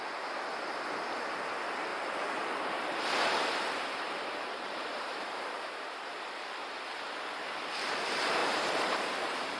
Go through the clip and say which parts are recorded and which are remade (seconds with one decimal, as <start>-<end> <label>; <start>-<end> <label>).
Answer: 0.0-1.9 recorded; 1.9-5.9 remade; 5.9-8.4 recorded; 8.4-9.6 remade